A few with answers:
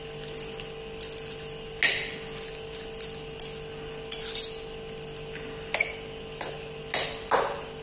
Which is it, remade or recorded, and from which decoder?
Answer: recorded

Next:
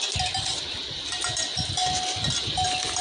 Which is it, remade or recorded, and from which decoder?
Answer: remade, vocoder, BigVGAN v2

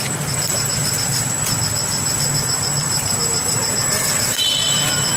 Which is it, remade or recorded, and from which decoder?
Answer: remade, vocoder, BigVGAN v2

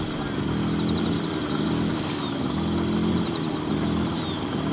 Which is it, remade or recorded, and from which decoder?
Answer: recorded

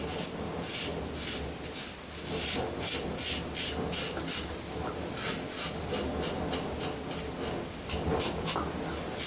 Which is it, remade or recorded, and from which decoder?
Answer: recorded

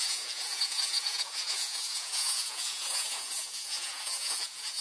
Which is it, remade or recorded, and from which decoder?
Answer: remade, vocoder, Vocos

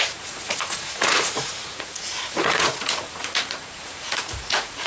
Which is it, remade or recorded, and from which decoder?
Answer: remade, vocoder, Vocos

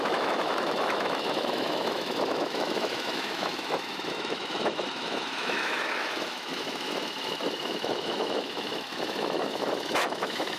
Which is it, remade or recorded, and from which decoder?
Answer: remade, autoencoder, DAC-VAE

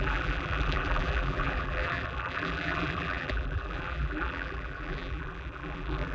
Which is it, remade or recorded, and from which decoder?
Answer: remade, vocoder, BigVGAN v2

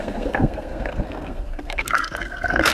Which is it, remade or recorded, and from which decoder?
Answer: remade, codec, SNAC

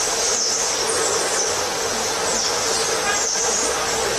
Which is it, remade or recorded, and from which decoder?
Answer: recorded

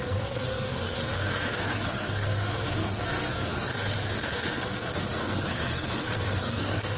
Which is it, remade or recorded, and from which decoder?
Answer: remade, codec, SNAC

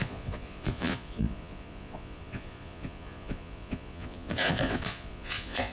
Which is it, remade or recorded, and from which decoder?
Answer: remade, vocoder, Vocos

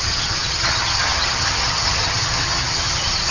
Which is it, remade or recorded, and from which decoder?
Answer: remade, vocoder, HiFi-GAN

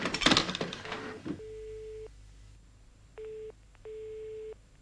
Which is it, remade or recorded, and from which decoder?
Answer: recorded